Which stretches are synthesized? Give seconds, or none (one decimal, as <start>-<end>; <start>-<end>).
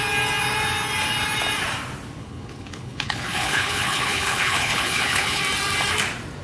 2.2-5.4